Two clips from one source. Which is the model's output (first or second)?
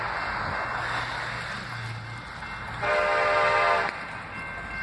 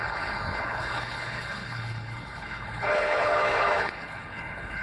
second